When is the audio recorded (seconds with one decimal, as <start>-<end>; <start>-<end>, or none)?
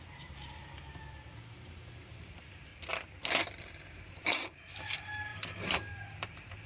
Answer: 0.6-2.1; 2.7-3.6